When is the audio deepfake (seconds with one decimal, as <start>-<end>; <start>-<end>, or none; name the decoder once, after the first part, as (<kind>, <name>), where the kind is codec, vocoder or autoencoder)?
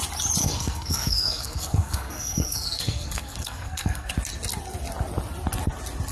0.4-4.1 (codec, SNAC)